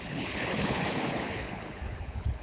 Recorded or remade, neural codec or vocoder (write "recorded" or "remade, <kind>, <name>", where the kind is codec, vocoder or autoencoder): remade, codec, HILCodec